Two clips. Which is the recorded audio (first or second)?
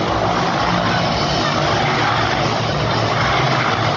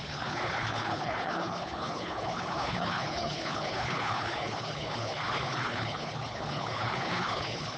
first